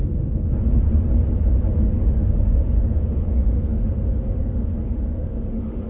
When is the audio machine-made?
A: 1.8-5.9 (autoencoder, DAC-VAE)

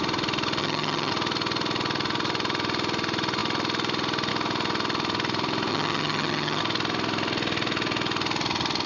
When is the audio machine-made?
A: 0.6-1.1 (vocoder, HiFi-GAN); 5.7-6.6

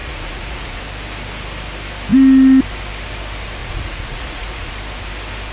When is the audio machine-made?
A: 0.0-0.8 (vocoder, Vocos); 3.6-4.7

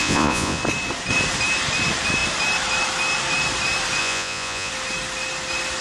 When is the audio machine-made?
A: 0.0-0.6 (vocoder, Vocos); 4.0-4.7

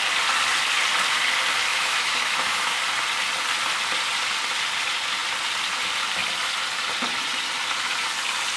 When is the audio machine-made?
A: 1.7-2.8 (autoencoder, DAC-VAE)

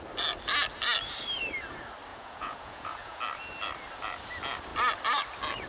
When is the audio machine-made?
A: 2.1-3.2 (vocoder, Vocos)